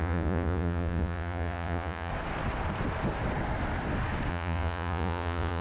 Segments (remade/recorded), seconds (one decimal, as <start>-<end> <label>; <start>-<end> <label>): 0.0-2.1 remade; 2.1-4.3 recorded; 4.3-5.6 remade